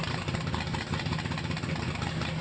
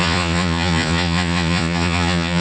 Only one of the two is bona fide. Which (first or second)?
first